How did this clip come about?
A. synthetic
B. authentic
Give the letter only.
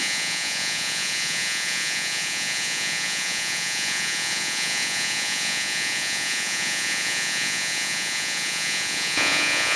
A